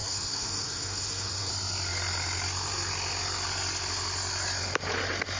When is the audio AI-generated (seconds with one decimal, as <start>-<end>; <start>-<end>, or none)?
0.0-1.5